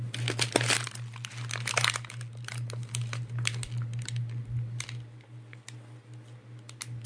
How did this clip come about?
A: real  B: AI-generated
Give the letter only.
A